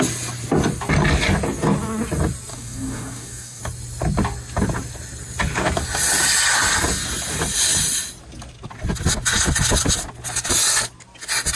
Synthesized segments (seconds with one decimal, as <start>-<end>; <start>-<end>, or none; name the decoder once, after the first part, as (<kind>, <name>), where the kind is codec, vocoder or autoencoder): 2.5-3.6 (codec, DAC)